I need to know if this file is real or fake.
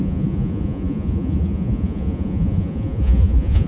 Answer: fake